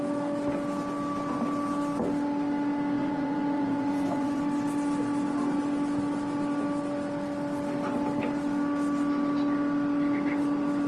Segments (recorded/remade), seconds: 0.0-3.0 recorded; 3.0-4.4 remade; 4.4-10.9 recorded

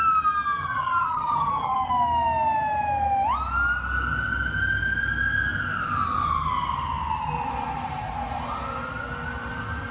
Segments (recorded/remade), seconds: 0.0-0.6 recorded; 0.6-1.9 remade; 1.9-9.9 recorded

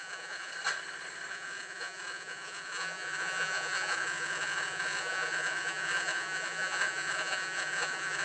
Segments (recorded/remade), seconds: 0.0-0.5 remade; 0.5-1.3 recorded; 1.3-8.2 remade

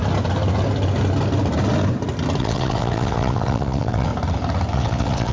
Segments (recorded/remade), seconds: 0.0-2.4 recorded; 2.4-4.1 remade; 4.1-4.7 recorded; 4.7-5.3 remade